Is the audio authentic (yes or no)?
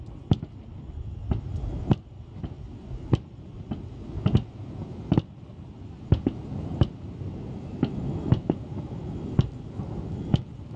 yes